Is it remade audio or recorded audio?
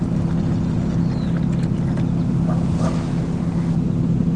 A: recorded